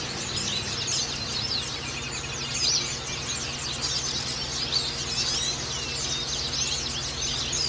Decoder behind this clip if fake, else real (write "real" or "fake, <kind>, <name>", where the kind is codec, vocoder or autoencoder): real